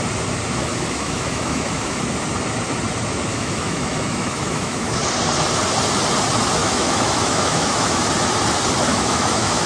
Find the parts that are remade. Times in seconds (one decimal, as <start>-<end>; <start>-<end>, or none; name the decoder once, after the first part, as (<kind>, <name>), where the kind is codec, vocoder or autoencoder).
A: 0.6-2.0 (autoencoder, DAC-VAE); 3.3-5.0; 6.6-8.0; 8.9-9.7